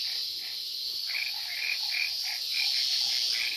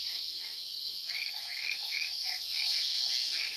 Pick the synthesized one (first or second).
second